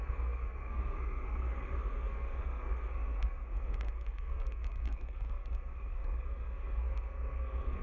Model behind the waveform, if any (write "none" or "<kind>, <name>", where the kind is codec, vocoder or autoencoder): codec, SNAC